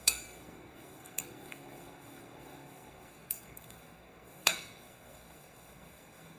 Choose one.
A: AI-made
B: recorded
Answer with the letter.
A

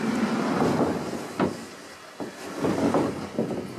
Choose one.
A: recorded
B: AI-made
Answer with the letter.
A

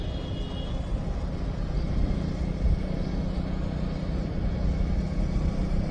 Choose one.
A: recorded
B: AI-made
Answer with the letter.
A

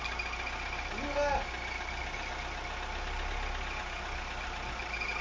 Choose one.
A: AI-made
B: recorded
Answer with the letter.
B